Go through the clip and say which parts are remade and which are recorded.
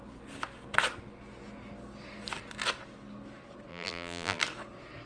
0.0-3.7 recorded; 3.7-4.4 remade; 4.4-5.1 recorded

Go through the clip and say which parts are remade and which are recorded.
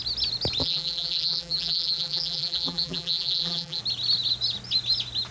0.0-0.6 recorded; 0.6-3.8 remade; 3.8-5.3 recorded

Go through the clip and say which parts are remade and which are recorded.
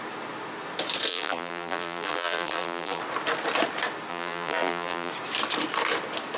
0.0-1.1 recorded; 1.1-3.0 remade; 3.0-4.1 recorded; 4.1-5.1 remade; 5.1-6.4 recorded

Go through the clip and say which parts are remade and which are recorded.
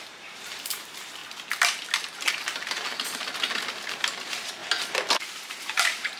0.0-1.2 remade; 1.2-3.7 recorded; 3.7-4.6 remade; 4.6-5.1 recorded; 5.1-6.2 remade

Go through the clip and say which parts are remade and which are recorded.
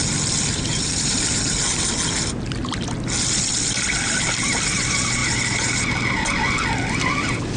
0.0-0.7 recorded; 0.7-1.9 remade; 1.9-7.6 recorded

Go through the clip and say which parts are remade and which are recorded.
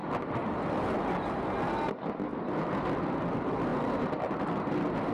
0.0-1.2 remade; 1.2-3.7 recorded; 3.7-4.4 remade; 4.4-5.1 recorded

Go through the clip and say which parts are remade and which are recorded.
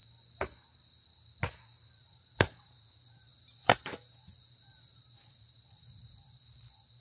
0.0-2.0 recorded; 2.0-7.0 remade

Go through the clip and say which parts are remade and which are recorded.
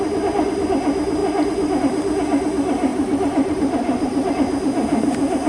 0.0-2.9 recorded; 2.9-4.3 remade; 4.3-5.5 recorded